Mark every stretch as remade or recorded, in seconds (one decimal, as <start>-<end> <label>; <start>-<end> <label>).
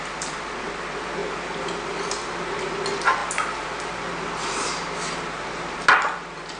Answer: 0.0-6.6 recorded